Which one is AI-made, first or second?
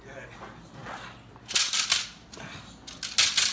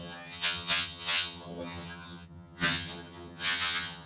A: second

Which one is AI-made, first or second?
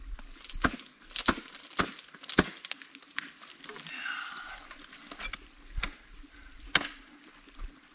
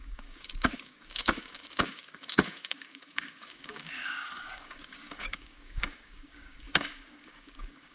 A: second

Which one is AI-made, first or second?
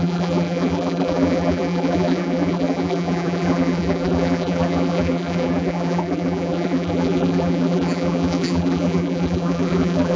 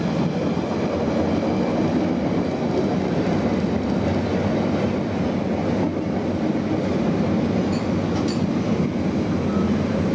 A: first